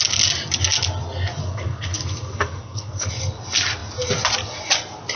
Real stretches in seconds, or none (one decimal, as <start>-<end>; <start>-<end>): 0.0-1.4; 3.1-5.2